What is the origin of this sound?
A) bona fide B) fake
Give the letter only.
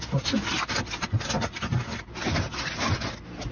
A